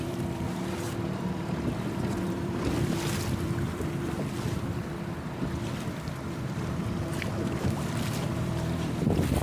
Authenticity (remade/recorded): remade